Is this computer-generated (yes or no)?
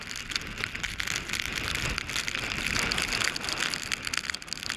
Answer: no